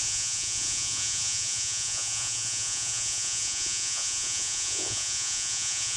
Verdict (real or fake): fake